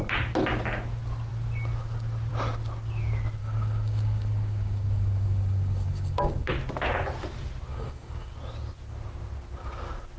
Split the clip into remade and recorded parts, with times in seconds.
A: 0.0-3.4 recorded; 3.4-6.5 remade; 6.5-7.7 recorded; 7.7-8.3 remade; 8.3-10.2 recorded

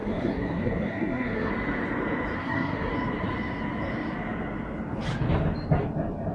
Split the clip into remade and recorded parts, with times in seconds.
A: 0.0-1.5 remade; 1.5-2.4 recorded; 2.4-2.9 remade; 2.9-6.3 recorded

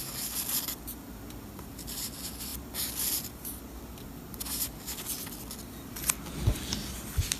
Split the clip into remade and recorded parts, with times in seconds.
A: 0.0-7.4 recorded

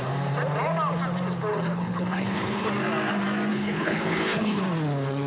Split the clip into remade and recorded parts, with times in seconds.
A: 0.0-1.5 recorded; 1.5-2.7 remade; 2.7-3.5 recorded; 3.5-4.6 remade; 4.6-5.3 recorded

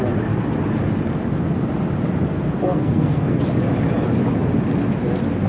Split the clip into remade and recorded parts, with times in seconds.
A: 0.0-2.3 recorded; 2.3-3.4 remade; 3.4-5.5 recorded